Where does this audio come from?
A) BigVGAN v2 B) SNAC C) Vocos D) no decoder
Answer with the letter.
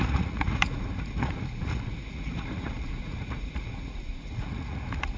C